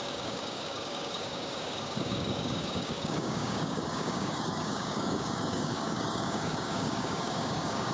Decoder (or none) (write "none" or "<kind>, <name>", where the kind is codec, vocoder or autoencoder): codec, DAC